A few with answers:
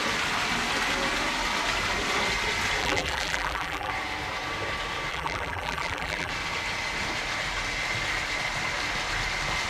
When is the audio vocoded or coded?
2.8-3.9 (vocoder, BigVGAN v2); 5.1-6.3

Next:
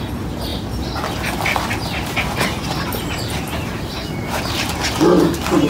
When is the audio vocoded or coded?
none

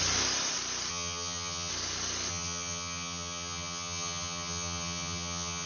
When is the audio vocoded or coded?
0.9-1.7 (vocoder, HiFi-GAN); 2.3-5.7